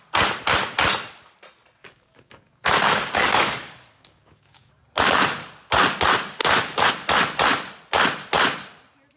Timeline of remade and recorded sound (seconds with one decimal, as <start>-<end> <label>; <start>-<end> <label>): 0.0-1.8 recorded; 1.8-4.7 remade; 4.7-6.4 recorded; 6.4-6.9 remade; 6.9-9.2 recorded